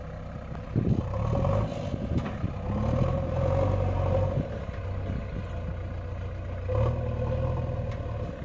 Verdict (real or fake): real